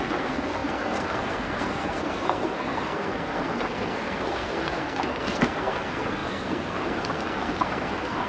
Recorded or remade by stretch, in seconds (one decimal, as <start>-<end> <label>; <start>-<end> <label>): 0.0-8.3 remade